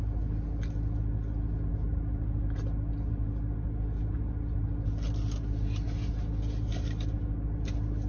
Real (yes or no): yes